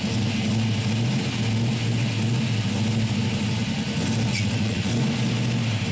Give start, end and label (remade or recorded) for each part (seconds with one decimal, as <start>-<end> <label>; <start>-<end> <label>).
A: 0.0-4.3 recorded; 4.3-4.9 remade; 4.9-5.9 recorded